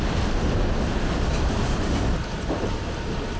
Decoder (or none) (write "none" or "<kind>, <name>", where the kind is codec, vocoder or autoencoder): vocoder, BigVGAN v2